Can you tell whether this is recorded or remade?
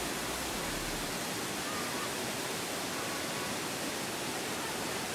recorded